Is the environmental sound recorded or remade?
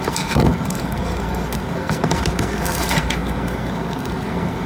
remade